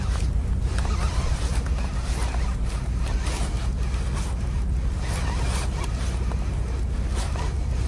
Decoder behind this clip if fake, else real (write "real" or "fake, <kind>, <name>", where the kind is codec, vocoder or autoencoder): real